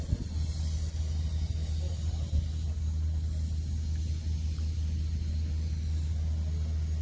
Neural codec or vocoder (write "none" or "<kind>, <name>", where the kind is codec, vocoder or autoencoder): none